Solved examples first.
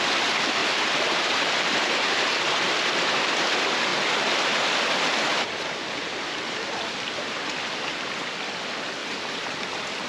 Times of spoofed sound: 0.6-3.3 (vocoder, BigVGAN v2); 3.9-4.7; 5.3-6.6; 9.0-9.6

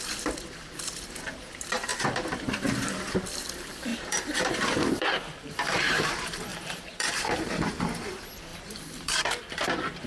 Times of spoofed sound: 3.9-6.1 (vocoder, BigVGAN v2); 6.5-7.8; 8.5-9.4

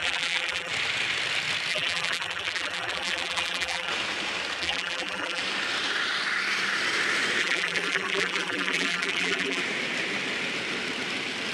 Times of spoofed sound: 0.0-0.7 (vocoder, BigVGAN v2); 1.7-3.9; 4.6-5.4; 7.4-9.6

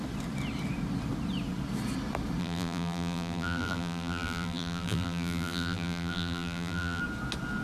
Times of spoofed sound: 2.4-7.0 (vocoder, BigVGAN v2)

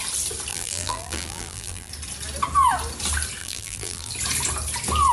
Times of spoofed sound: 0.5-1.9 (vocoder, BigVGAN v2); 3.4-4.1